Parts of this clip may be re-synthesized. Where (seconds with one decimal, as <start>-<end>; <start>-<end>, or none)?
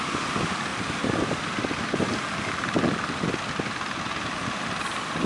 none